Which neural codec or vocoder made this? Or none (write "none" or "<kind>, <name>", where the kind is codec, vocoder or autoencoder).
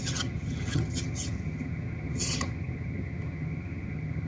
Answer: vocoder, HiFi-GAN